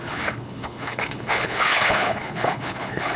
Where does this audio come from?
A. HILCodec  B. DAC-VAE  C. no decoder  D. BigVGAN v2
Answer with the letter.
A